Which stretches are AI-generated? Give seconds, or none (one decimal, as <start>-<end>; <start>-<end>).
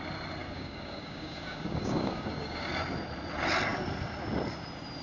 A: 0.4-2.7